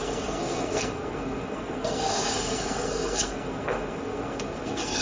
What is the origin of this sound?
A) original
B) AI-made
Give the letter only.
B